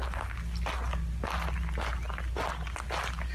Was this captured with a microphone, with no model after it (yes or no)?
yes